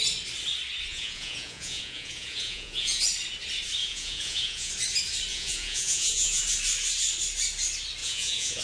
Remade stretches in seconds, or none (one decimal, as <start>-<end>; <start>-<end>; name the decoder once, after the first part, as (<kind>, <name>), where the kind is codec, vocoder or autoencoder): 0.9-3.0 (vocoder, Vocos); 3.8-4.7; 5.3-6.4; 8.0-8.6